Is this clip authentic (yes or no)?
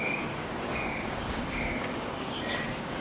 no